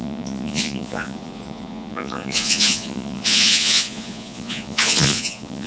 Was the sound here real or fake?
fake